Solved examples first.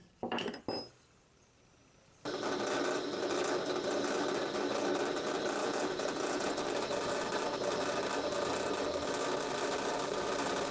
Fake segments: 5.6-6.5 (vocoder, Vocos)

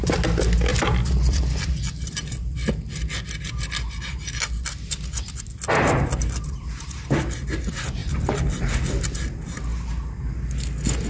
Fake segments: 0.7-2.1 (vocoder, BigVGAN v2); 8.0-9.0

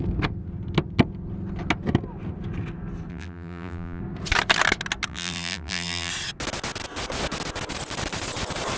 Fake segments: 3.1-4.0 (vocoder, BigVGAN v2); 5.1-6.1

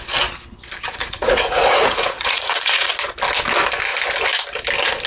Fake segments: 1.0-2.9 (vocoder, Vocos)

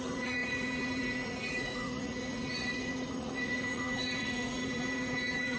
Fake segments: 0.0-5.6 (vocoder, Vocos)

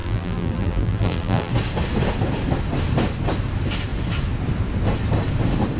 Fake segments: 0.0-1.5 (vocoder, BigVGAN v2)

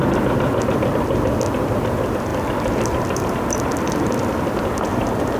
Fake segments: none